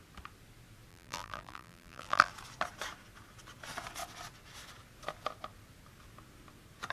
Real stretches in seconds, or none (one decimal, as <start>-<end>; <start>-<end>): 0.0-0.9; 2.3-6.9